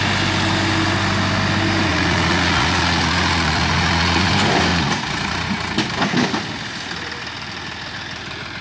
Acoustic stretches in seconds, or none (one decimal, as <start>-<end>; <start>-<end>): 0.0-1.9; 4.3-4.7; 5.7-8.6